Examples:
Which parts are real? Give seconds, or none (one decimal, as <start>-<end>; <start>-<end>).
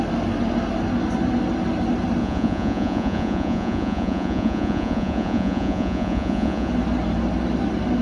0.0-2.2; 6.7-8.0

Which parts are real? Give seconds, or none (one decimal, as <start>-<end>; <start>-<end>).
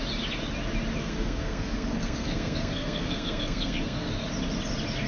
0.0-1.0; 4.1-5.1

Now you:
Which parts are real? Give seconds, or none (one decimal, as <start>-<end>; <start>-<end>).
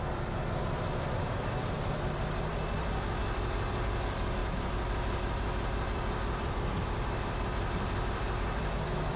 none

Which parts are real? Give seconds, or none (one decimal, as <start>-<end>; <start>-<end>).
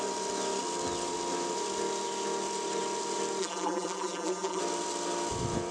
0.0-3.4; 4.6-5.7